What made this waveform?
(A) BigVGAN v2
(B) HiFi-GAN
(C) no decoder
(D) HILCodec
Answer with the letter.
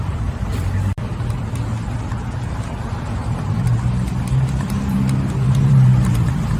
A